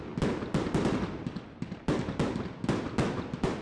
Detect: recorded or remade recorded